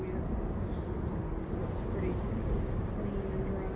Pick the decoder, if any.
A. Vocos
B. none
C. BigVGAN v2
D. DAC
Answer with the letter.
B